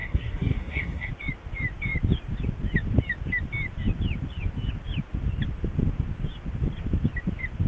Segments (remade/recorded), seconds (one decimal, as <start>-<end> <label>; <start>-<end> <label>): 0.0-1.1 remade; 1.1-7.7 recorded